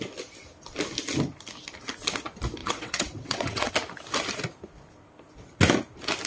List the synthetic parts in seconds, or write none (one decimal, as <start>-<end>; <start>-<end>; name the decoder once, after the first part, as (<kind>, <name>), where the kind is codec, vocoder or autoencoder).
2.6-3.7 (vocoder, WaveNeXt)